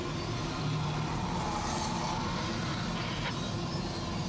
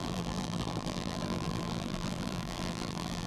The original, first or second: first